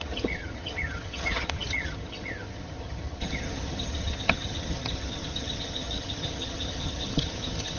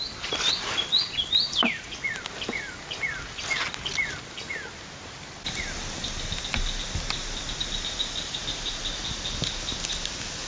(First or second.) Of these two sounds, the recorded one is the second